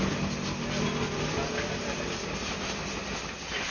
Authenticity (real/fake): real